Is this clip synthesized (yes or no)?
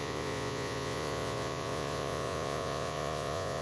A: yes